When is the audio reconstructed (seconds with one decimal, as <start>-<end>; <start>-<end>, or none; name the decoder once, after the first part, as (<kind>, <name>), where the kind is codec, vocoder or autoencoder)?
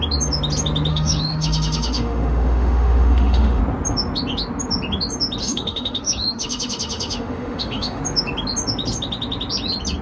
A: 0.9-3.6 (autoencoder, DAC-VAE); 5.4-8.0